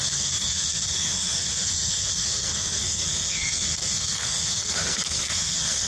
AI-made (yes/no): yes